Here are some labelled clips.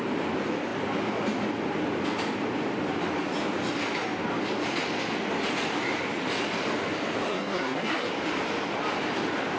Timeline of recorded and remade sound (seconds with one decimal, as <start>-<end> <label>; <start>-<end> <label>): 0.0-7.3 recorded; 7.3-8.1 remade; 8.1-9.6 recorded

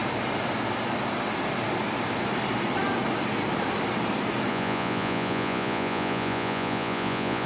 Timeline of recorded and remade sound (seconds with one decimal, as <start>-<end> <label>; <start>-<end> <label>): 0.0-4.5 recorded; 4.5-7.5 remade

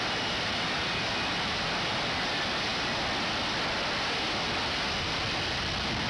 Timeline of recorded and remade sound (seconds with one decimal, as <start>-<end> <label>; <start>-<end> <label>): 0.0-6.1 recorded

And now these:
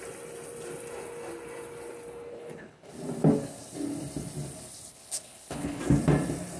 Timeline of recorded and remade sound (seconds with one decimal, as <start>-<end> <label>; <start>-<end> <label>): 0.0-2.3 recorded; 2.3-2.9 remade; 2.9-4.9 recorded; 4.9-5.8 remade; 5.8-6.6 recorded

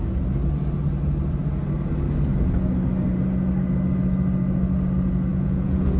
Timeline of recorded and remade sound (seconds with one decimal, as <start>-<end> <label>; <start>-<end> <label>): 0.0-5.3 recorded; 5.3-6.0 remade

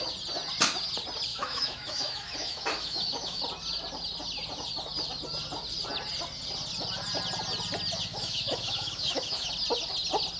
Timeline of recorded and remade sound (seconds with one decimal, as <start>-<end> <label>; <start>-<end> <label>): 0.0-1.3 recorded; 1.3-3.4 remade; 3.4-8.1 recorded; 8.1-9.5 remade; 9.5-10.4 recorded

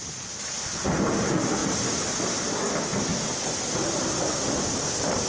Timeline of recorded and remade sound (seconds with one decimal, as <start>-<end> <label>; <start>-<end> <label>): 0.0-5.3 recorded